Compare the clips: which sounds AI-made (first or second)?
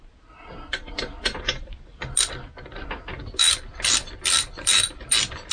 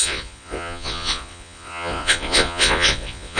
second